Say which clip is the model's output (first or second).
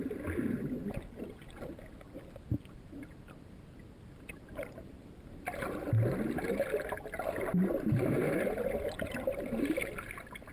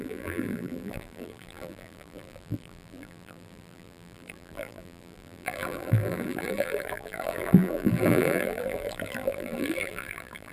second